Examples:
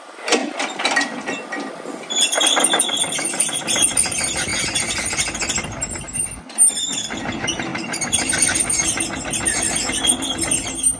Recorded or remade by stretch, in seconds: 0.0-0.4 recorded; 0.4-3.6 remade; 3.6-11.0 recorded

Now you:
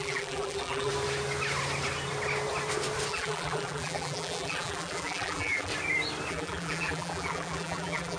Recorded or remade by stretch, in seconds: 0.0-0.9 remade; 0.9-3.1 recorded; 3.1-5.7 remade; 5.7-6.3 recorded; 6.3-8.2 remade

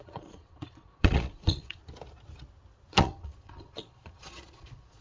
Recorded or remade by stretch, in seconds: 0.0-1.8 remade; 1.8-2.9 recorded; 2.9-5.0 remade